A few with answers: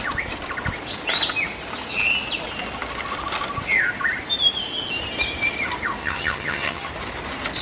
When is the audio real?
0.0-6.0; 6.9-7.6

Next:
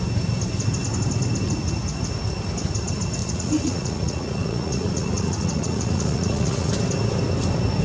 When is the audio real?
0.0-3.2; 6.7-7.8

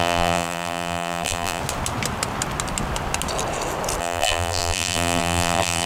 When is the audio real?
1.6-4.0

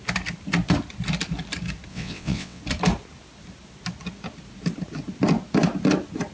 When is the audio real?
0.0-1.9; 2.6-6.3